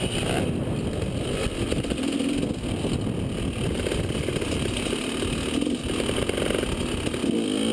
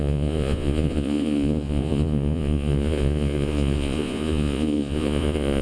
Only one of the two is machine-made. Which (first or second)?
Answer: second